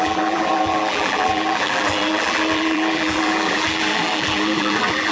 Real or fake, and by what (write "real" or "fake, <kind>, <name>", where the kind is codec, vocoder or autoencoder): fake, vocoder, BigVGAN v2